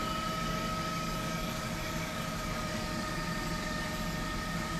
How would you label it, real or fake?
fake